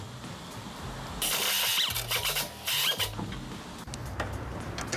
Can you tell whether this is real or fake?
real